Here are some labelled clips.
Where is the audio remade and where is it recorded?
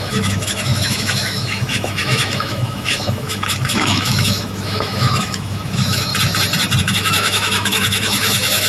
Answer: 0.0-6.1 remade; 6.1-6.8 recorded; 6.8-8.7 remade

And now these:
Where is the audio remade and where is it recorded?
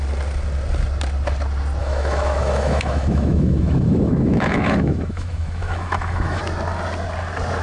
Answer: 0.0-1.8 recorded; 1.8-6.4 remade; 6.4-7.6 recorded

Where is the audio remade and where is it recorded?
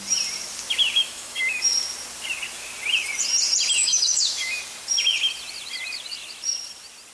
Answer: 0.0-1.0 recorded; 1.0-1.6 remade; 1.6-3.8 recorded; 3.8-4.6 remade; 4.6-7.1 recorded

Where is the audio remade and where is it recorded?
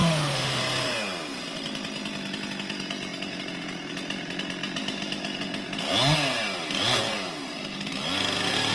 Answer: 0.0-0.6 remade; 0.6-8.7 recorded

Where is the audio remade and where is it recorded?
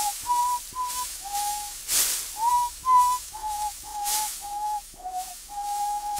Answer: 0.0-0.4 remade; 0.4-0.9 recorded; 0.9-1.8 remade; 1.8-2.5 recorded; 2.5-6.2 remade